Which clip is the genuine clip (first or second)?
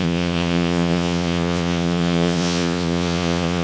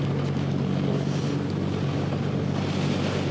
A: second